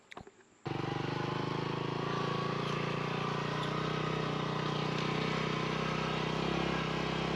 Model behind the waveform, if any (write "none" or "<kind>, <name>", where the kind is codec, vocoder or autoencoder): none